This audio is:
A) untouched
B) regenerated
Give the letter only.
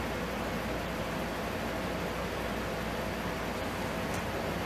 A